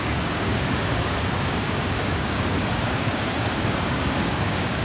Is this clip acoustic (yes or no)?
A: no